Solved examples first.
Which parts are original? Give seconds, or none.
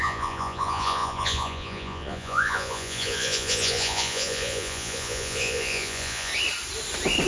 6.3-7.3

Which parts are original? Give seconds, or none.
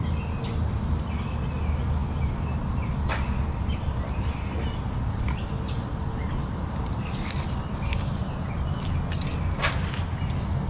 0.0-10.7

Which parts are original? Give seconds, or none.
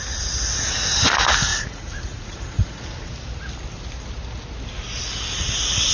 0.0-1.5; 2.8-5.9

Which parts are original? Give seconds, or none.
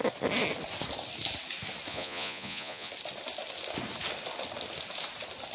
0.0-1.9; 2.9-5.5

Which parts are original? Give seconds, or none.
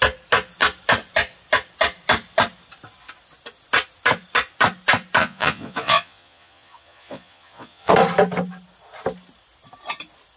0.0-5.2; 7.9-10.4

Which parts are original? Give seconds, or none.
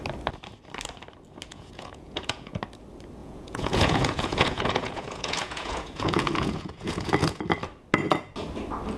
0.0-1.5; 2.6-3.2; 7.4-9.0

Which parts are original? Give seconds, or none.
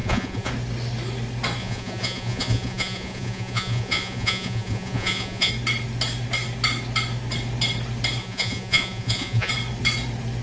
0.5-1.6; 5.5-8.2; 9.5-10.4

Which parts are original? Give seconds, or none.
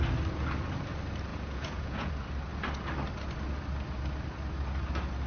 0.0-1.3; 2.1-5.3